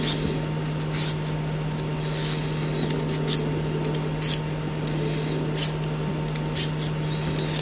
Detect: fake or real real